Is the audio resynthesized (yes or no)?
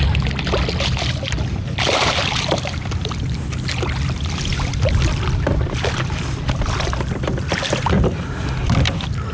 no